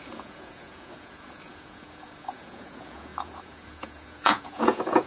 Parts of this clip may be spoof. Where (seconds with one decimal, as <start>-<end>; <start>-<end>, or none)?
0.0-5.1

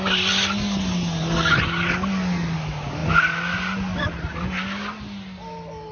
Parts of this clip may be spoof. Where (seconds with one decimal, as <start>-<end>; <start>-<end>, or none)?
none

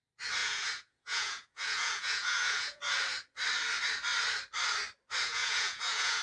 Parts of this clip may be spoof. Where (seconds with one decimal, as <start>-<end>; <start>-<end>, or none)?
0.4-2.8; 5.2-6.2

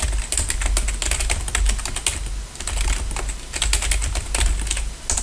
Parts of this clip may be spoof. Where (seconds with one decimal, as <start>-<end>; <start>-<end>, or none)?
none

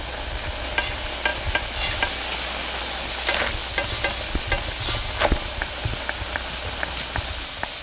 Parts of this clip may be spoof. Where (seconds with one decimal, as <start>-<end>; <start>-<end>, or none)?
none

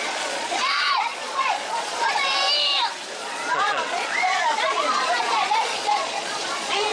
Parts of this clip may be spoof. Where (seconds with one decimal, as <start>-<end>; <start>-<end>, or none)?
0.0-2.3; 3.2-6.9

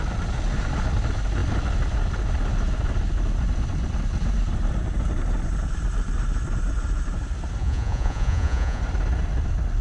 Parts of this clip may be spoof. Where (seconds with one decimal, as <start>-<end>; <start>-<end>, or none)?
7.6-8.8

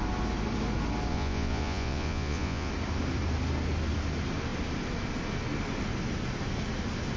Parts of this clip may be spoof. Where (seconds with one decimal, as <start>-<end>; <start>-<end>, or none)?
1.1-2.7